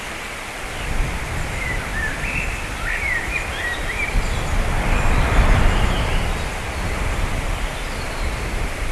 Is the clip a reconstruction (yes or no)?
yes